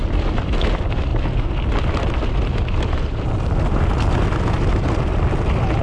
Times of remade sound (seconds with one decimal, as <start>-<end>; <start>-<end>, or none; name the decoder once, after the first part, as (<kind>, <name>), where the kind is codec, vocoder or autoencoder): 1.1-4.2 (vocoder, BigVGAN v2)